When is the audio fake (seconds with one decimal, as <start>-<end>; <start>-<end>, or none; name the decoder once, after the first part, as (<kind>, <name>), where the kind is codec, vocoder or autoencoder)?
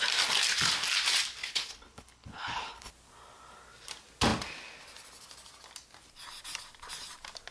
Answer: 1.4-2.9 (codec, HILCodec)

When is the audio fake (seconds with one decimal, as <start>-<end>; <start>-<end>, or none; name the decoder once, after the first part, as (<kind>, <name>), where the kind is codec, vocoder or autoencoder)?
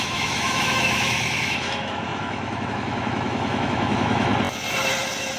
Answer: 0.0-4.3 (autoencoder, DAC-VAE)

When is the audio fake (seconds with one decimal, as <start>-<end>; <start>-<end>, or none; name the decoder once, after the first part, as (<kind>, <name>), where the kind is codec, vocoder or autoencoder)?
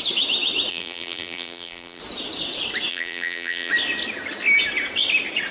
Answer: 0.7-2.0 (vocoder, BigVGAN v2); 2.9-3.7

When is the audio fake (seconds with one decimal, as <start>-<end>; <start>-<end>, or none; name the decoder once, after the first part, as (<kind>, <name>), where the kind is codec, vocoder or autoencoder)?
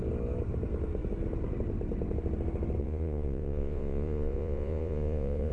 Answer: 2.8-5.5 (vocoder, Vocos)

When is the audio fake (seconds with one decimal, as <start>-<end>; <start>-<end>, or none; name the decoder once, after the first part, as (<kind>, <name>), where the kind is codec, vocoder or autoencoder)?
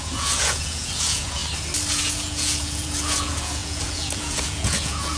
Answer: 0.0-1.4 (vocoder, Vocos); 1.9-5.2